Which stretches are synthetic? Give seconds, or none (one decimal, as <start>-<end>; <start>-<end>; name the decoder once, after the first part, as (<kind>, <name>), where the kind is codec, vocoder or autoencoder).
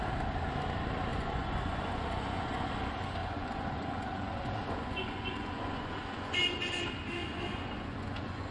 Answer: 1.1-2.7 (vocoder, Vocos); 3.2-6.8; 7.2-8.5